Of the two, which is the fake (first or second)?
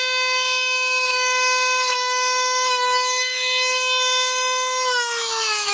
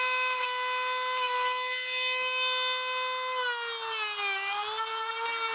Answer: first